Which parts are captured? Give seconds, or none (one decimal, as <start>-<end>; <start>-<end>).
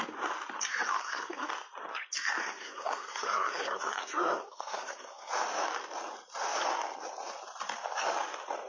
0.0-1.0; 1.5-2.4; 5.3-8.7